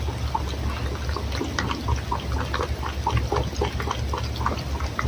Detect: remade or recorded recorded